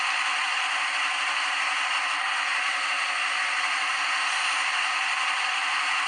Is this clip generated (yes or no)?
no